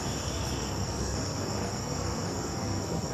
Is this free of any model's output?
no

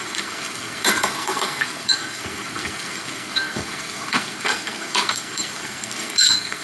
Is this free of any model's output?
no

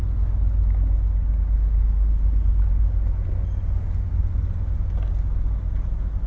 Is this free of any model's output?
yes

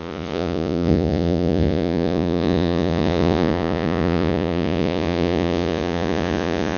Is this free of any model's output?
no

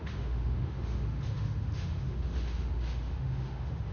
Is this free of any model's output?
no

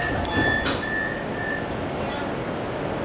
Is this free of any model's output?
yes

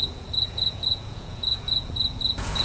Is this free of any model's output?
no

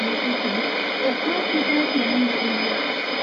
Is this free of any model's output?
no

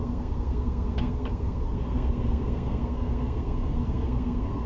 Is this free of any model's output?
no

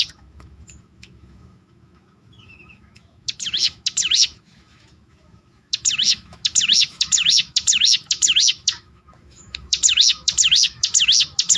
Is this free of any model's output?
no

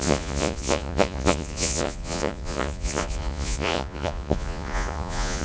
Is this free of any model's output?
no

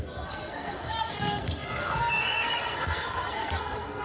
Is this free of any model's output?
no